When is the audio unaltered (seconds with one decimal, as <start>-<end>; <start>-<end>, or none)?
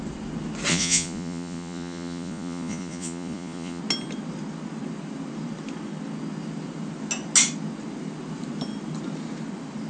0.0-0.7; 3.8-9.9